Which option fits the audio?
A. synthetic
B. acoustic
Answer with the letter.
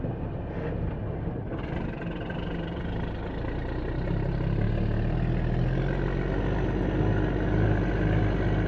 B